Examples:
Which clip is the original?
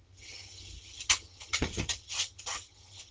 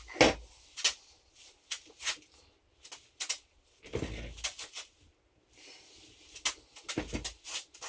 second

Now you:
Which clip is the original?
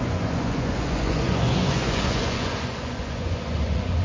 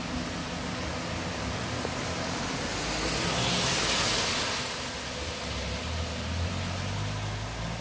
second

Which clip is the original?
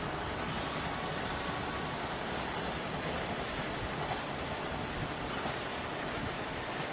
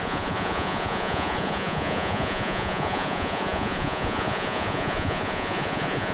first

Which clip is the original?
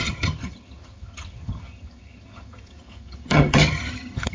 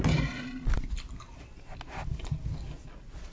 second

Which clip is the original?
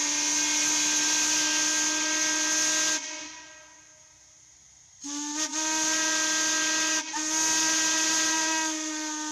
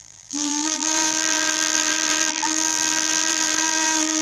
first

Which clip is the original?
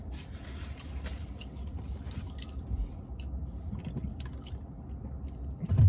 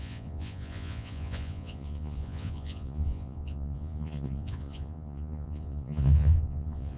first